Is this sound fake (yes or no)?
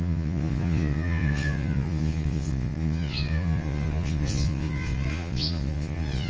yes